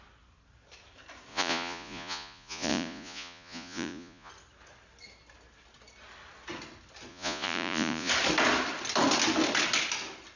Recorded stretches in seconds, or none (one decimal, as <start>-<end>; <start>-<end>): 0.0-1.3; 4.3-7.1; 8.1-10.4